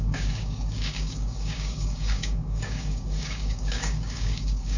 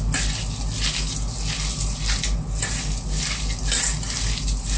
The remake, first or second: first